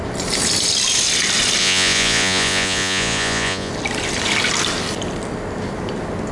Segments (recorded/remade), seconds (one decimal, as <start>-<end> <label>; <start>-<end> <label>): 0.0-1.6 recorded; 1.6-3.7 remade; 3.7-6.3 recorded